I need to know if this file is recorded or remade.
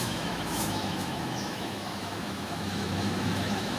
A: remade